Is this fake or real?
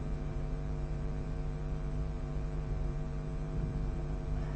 fake